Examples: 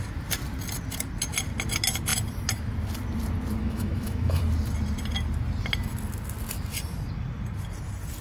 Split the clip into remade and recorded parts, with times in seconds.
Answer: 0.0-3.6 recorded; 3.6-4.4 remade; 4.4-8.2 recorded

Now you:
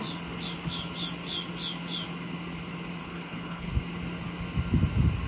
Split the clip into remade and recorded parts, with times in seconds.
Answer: 0.0-3.0 recorded; 3.0-3.7 remade; 3.7-5.3 recorded

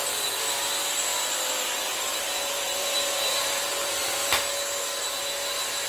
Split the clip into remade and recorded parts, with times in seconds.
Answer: 0.0-4.0 remade; 4.0-5.9 recorded

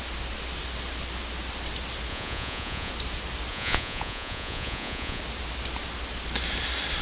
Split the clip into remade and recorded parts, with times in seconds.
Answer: 0.0-2.1 recorded; 2.1-2.9 remade; 2.9-3.5 recorded; 3.5-5.2 remade; 5.2-7.0 recorded

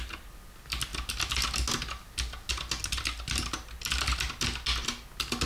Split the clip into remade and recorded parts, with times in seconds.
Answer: 0.0-5.5 recorded